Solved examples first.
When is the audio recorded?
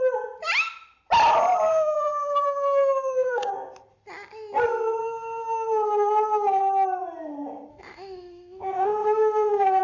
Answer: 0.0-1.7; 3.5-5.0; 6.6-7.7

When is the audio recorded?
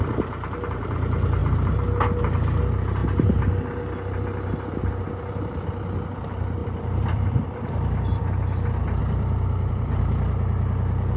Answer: 0.0-6.6; 8.2-9.0; 10.0-11.2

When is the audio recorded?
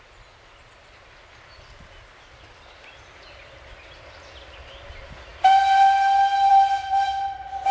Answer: 0.0-7.7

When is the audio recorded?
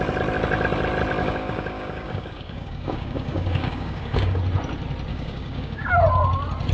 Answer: 0.0-1.2; 4.4-5.1; 5.9-6.7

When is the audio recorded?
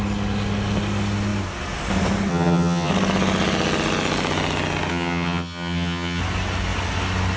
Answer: 0.0-2.3; 2.9-4.9; 6.2-7.4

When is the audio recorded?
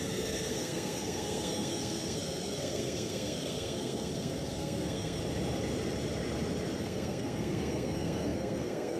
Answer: 5.2-6.8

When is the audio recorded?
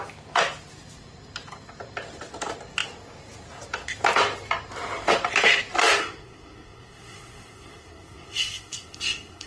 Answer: 0.0-6.0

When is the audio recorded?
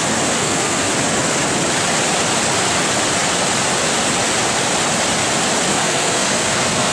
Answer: 0.0-0.4; 0.9-5.7